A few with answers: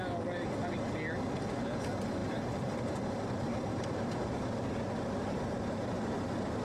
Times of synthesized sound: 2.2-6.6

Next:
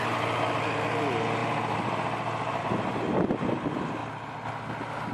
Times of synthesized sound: none

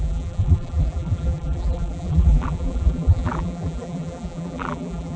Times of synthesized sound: 0.0-5.2

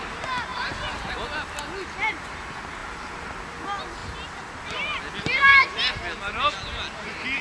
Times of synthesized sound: none